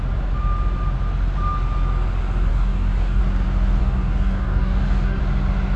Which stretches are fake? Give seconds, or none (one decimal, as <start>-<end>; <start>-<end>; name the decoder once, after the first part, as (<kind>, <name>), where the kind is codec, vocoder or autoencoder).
2.5-3.2 (codec, DAC); 3.8-5.2